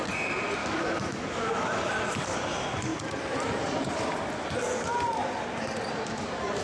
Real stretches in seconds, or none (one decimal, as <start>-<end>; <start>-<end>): 0.0-0.6; 1.9-6.6